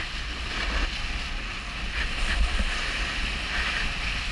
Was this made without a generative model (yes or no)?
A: yes